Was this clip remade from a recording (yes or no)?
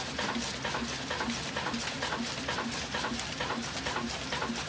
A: no